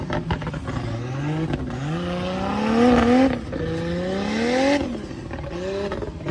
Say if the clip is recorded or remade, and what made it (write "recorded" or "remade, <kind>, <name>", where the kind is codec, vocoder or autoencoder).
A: recorded